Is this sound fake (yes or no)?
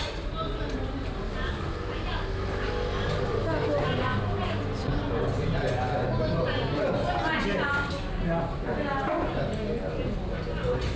no